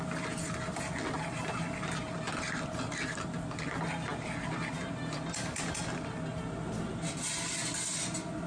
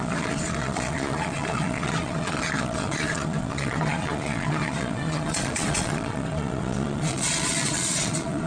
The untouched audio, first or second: first